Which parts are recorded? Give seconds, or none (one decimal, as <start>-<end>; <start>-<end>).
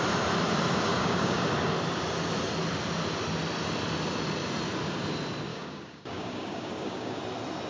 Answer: 0.0-0.9; 1.4-5.5; 7.2-7.7